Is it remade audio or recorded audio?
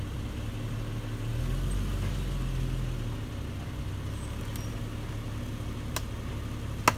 recorded